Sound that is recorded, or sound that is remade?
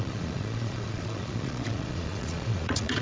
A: remade